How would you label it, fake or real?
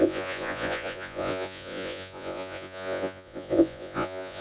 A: fake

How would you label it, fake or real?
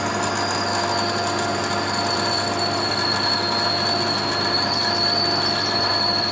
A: real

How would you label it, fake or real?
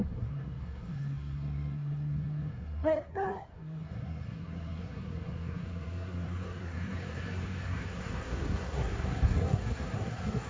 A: fake